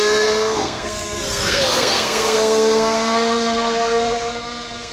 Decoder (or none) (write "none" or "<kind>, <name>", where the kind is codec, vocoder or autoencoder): codec, SNAC